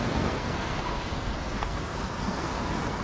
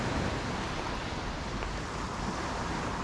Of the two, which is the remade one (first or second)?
first